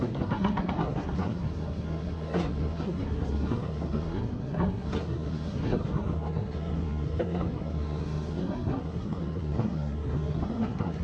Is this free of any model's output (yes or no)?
no